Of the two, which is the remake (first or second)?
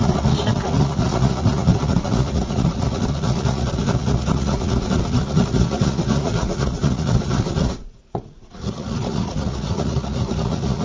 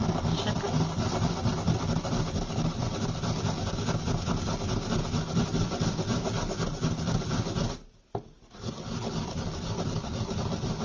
first